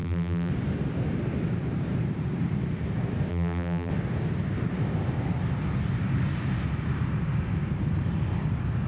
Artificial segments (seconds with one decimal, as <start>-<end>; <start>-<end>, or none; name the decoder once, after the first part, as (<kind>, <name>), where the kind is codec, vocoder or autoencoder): 0.0-0.5 (vocoder, BigVGAN v2); 3.3-3.9